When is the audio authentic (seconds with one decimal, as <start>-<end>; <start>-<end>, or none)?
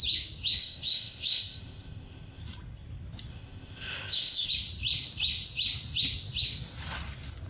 0.0-0.6; 2.4-3.3; 4.5-7.5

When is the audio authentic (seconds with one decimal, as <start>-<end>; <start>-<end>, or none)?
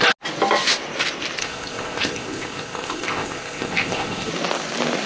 0.0-1.4; 4.3-5.1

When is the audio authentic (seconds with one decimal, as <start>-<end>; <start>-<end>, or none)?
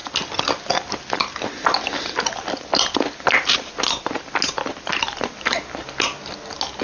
0.0-6.8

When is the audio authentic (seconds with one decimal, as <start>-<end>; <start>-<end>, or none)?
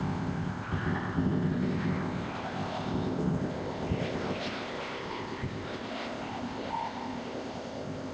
none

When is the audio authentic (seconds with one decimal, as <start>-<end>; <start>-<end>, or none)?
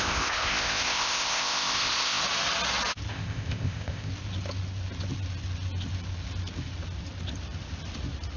2.2-3.1; 4.1-8.4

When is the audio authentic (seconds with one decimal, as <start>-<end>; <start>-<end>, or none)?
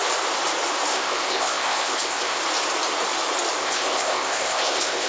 0.0-0.9; 2.4-3.6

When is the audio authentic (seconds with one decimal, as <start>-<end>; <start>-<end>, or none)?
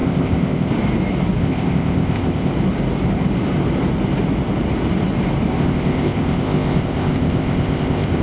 0.7-1.4; 2.5-5.6